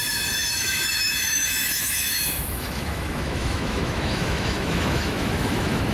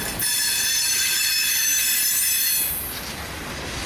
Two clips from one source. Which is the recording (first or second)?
second